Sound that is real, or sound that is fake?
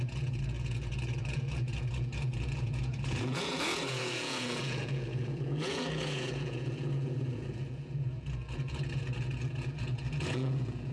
fake